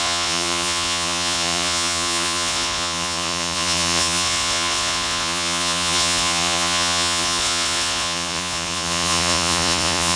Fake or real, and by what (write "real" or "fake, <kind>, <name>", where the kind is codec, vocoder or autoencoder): fake, vocoder, Vocos